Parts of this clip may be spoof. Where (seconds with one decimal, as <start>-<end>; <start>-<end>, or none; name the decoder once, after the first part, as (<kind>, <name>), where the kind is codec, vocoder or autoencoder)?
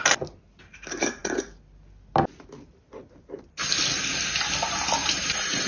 5.0-5.7 (vocoder, BigVGAN v2)